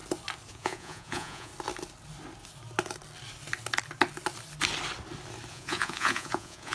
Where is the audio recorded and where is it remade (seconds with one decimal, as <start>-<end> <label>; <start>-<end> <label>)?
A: 0.0-0.5 recorded; 0.5-1.5 remade; 1.5-5.5 recorded; 5.5-6.7 remade